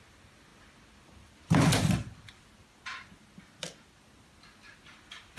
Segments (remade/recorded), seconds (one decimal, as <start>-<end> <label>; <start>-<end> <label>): 0.0-5.4 recorded